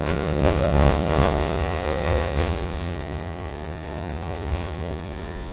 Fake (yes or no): yes